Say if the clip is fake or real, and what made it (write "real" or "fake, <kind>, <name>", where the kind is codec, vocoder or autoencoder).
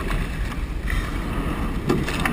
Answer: real